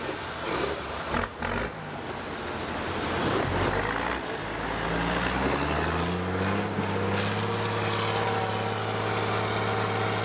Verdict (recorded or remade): recorded